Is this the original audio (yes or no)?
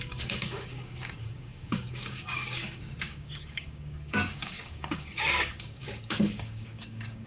no